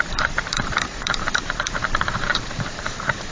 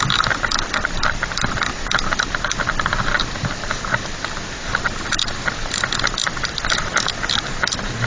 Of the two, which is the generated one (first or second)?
first